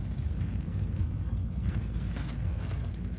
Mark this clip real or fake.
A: fake